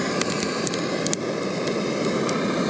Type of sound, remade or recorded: recorded